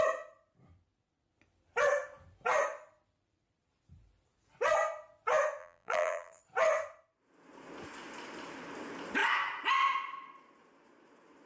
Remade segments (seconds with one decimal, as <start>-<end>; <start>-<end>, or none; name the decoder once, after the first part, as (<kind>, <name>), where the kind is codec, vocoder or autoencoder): 5.6-6.4 (vocoder, BigVGAN v2)